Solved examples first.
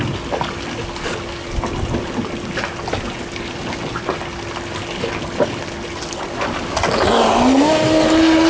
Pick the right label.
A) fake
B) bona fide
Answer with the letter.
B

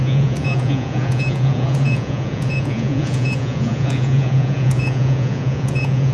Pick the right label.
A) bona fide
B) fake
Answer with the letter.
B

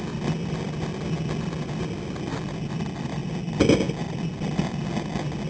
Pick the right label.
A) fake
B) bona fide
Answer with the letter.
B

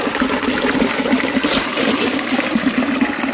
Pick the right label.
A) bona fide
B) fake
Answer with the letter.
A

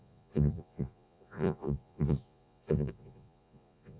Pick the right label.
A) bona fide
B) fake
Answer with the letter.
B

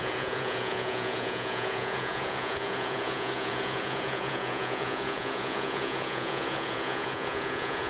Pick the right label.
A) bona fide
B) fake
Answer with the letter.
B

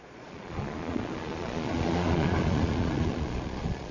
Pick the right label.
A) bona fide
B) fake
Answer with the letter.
B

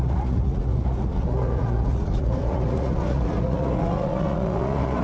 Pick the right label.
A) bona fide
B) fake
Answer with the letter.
B